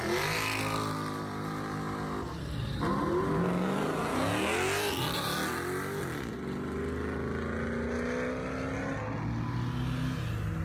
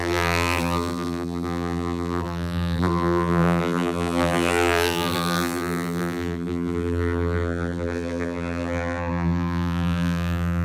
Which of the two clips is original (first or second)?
first